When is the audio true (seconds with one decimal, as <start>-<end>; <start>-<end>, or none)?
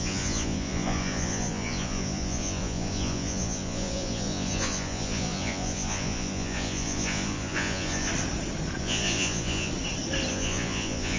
8.1-8.8; 9.7-10.3